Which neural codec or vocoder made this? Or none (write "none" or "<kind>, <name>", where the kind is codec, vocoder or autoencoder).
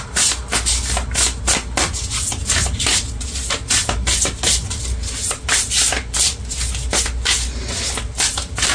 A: none